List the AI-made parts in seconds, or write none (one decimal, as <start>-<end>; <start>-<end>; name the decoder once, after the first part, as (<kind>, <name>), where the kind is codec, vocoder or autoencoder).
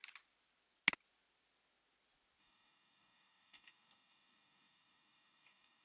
2.4-5.8 (codec, DAC)